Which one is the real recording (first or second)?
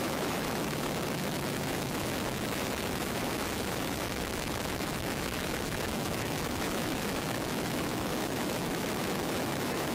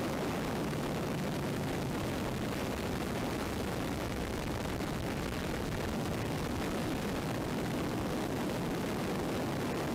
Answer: second